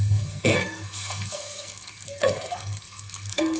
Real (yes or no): no